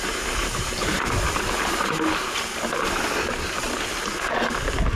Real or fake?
real